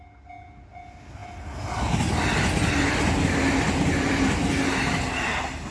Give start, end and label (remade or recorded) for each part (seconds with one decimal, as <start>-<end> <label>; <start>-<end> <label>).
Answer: 0.0-5.7 recorded